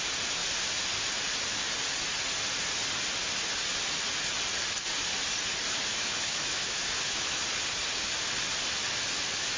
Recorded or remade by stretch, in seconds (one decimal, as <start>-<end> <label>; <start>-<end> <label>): 0.0-5.9 recorded; 5.9-7.4 remade; 7.4-9.6 recorded